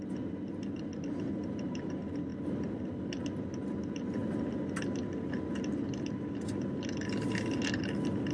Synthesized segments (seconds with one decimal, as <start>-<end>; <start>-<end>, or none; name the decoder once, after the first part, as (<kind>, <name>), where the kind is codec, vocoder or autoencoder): 0.9-1.5 (vocoder, BigVGAN v2); 2.3-3.1